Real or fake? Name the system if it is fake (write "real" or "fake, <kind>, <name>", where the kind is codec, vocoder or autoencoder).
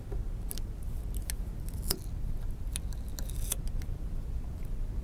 real